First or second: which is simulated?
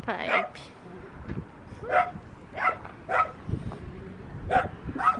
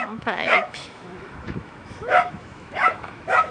second